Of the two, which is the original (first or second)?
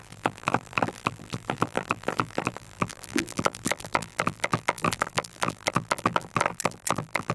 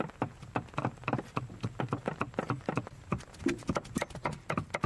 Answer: second